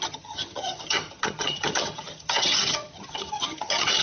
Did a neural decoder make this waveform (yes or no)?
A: yes